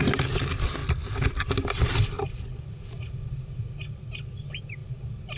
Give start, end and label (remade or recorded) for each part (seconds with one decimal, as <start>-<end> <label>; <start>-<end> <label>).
0.0-5.4 recorded